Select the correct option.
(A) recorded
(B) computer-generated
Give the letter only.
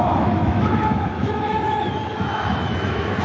B